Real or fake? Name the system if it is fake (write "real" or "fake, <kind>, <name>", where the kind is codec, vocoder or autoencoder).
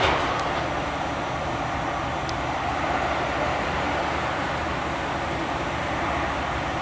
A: real